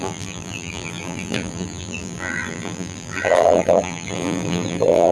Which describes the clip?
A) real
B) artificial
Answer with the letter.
B